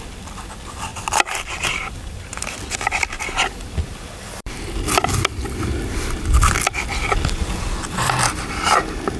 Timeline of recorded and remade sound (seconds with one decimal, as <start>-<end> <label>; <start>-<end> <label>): 0.0-9.2 recorded